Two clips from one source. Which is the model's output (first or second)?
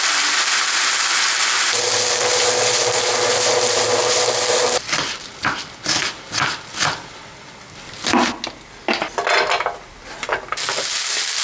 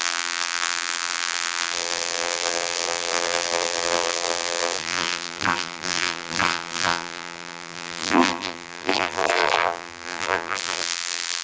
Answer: second